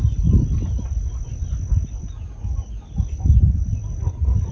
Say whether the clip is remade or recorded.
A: recorded